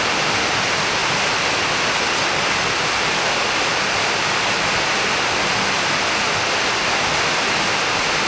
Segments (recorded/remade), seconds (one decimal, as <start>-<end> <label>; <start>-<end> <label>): 0.0-8.3 recorded